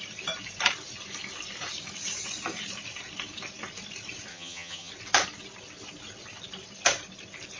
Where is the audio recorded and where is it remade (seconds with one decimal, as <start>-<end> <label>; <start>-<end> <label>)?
0.0-4.3 recorded; 4.3-4.9 remade; 4.9-7.6 recorded